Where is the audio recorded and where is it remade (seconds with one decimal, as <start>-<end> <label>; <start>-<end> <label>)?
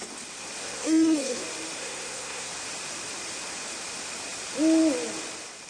0.0-0.7 recorded; 0.7-1.4 remade; 1.4-1.8 recorded; 1.8-2.5 remade; 2.5-5.7 recorded